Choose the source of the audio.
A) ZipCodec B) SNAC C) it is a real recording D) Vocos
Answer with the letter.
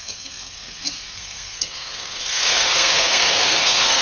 B